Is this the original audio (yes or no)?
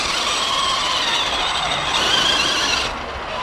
yes